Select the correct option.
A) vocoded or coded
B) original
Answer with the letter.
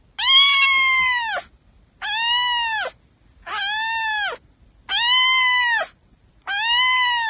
B